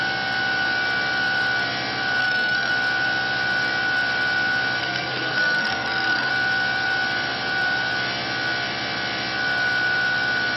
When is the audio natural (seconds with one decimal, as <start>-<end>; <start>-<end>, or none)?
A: 0.0-2.2; 2.7-4.8; 6.3-10.6

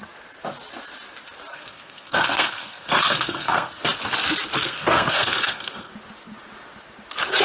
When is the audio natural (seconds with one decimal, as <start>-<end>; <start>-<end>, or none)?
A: 0.0-1.5; 3.8-4.6; 5.9-7.4